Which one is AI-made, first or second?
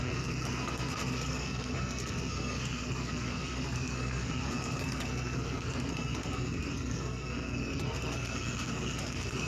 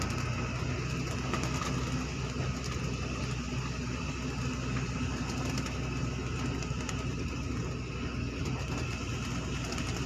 first